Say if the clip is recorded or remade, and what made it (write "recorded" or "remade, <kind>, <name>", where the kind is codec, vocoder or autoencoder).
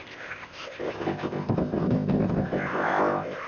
remade, codec, ZipCodec